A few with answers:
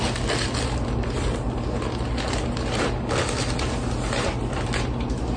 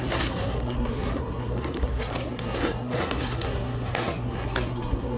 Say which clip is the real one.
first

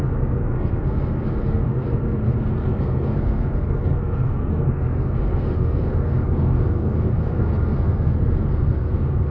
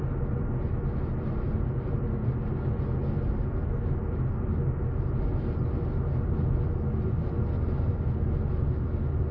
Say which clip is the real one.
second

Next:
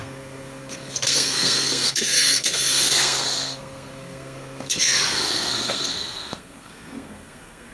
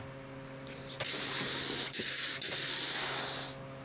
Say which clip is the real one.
second